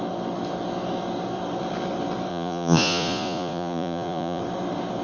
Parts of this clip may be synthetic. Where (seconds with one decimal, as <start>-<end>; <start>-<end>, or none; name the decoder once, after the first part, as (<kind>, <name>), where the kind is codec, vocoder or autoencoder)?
2.3-4.4 (vocoder, Vocos)